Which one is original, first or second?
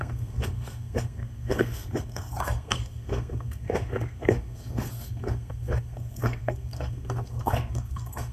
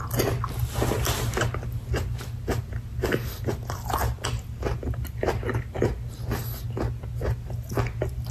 second